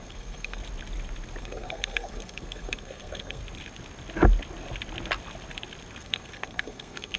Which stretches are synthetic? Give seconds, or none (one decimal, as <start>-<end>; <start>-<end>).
0.0-0.6; 1.4-3.4; 6.0-7.2

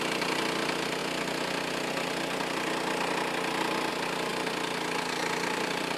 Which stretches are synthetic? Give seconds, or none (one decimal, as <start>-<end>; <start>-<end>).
0.0-1.0; 3.9-4.3; 5.2-6.0

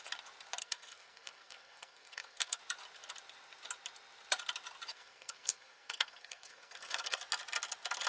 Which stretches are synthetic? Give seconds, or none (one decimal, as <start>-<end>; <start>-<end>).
0.6-2.6; 4.9-7.2

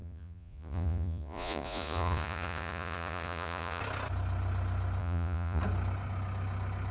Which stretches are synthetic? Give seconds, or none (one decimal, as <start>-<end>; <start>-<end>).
0.0-3.8; 5.0-5.6

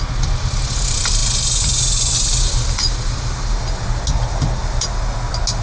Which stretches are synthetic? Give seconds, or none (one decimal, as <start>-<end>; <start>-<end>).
none

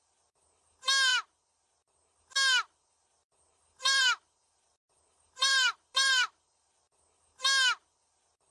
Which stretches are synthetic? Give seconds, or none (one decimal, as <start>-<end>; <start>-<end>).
3.5-6.9